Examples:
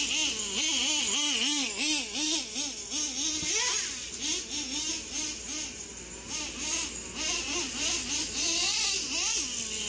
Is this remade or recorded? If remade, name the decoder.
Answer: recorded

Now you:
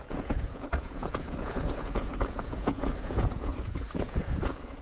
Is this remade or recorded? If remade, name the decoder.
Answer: remade, vocoder, Vocos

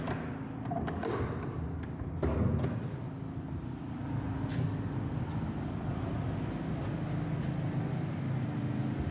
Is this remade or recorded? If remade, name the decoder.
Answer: recorded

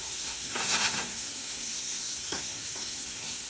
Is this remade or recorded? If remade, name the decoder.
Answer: remade, codec, SNAC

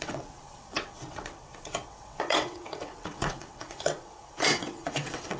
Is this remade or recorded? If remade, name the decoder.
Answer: remade, vocoder, WaveNeXt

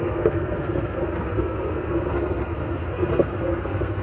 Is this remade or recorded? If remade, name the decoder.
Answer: remade, codec, SNAC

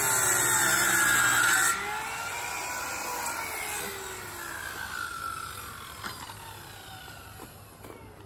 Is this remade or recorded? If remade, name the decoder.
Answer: recorded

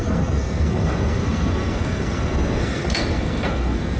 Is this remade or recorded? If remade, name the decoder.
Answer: remade, codec, SNAC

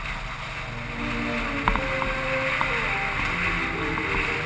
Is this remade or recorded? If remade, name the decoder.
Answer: recorded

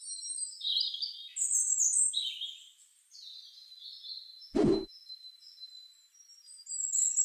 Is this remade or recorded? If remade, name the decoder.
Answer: recorded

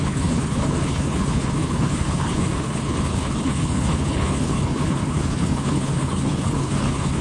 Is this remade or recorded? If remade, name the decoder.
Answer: remade, codec, HILCodec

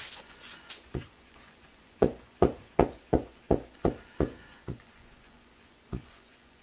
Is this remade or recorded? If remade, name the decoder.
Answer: remade, vocoder, Vocos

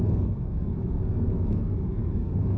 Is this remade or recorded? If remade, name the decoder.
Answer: remade, codec, SNAC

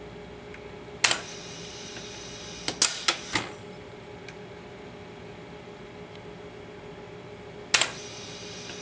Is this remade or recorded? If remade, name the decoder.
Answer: recorded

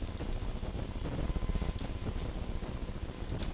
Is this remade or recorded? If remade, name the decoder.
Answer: recorded